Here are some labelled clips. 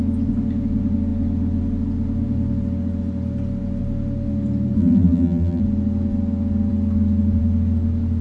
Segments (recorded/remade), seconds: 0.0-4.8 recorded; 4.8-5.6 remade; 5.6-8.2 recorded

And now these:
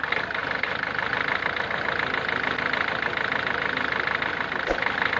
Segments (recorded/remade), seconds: 0.0-5.2 recorded

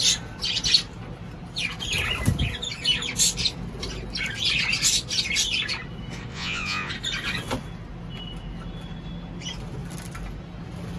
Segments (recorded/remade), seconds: 0.0-6.3 recorded; 6.3-6.9 remade; 6.9-11.0 recorded

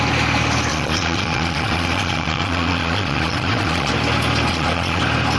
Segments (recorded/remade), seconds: 0.0-0.7 recorded; 0.7-3.9 remade; 3.9-4.5 recorded; 4.5-5.0 remade; 5.0-5.4 recorded

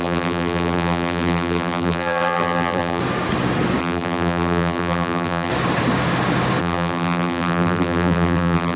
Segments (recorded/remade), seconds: 0.0-3.0 remade; 3.0-3.8 recorded; 3.8-5.5 remade; 5.5-6.6 recorded; 6.6-8.8 remade

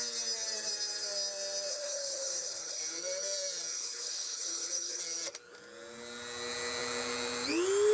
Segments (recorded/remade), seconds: 0.0-1.7 recorded; 1.7-2.8 remade; 2.8-3.7 recorded; 3.7-5.0 remade; 5.0-7.9 recorded

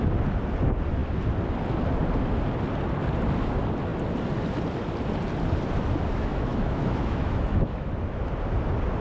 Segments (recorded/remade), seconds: 0.0-6.1 recorded; 6.1-7.9 remade; 7.9-9.0 recorded